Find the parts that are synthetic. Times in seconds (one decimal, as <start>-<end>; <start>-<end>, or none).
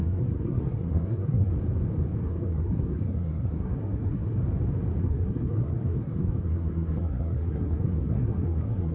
0.0-1.5; 2.2-4.4; 5.0-8.9